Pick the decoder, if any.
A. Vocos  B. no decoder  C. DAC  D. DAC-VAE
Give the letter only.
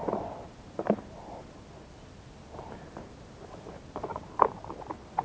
B